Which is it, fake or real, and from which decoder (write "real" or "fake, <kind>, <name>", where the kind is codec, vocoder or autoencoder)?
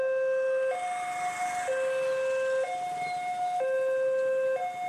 real